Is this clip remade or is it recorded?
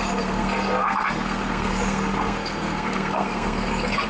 remade